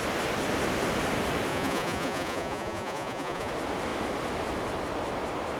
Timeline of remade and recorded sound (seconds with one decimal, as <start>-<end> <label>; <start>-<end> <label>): 0.0-1.5 recorded; 1.5-3.5 remade; 3.5-5.6 recorded